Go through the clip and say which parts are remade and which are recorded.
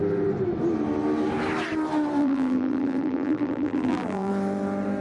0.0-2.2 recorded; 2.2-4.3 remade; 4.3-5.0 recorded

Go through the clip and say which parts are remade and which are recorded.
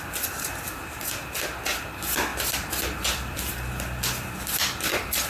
0.0-2.3 recorded; 2.3-3.5 remade; 3.5-5.3 recorded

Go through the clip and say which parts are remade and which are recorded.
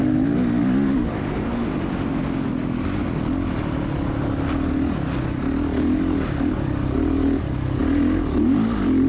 0.0-9.1 recorded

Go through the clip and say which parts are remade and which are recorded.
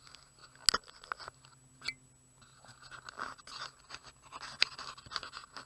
0.0-5.7 recorded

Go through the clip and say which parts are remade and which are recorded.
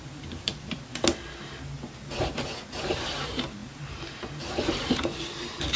0.0-0.5 remade; 0.5-2.2 recorded; 2.2-5.8 remade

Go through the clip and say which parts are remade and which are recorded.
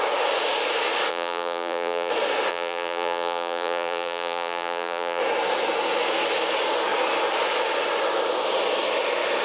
0.0-1.1 recorded; 1.1-2.1 remade; 2.1-2.5 recorded; 2.5-5.2 remade; 5.2-9.4 recorded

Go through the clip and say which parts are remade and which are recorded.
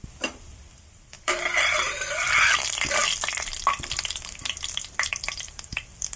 0.0-3.0 remade; 3.0-3.9 recorded; 3.9-6.2 remade